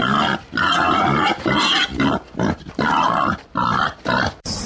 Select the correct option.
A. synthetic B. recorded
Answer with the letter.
B